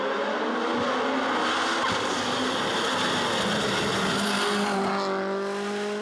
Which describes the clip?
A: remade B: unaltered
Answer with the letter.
B